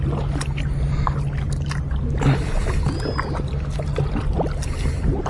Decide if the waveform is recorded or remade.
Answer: recorded